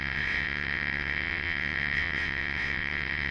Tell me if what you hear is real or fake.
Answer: fake